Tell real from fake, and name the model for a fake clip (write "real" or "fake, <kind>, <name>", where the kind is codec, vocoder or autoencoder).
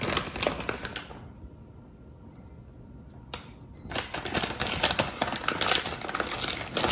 real